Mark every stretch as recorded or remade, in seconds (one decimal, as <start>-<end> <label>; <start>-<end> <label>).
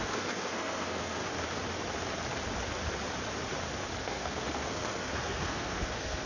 0.0-1.2 remade; 1.2-4.0 recorded; 4.0-6.3 remade